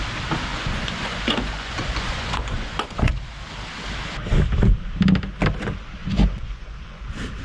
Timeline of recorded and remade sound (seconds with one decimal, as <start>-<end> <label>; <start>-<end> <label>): 0.0-0.5 recorded; 0.5-3.1 remade; 3.1-6.0 recorded; 6.0-7.0 remade; 7.0-7.4 recorded